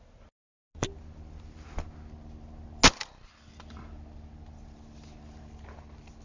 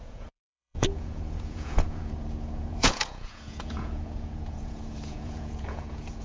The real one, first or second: first